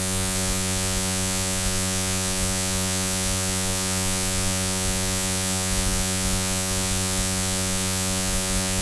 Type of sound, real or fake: fake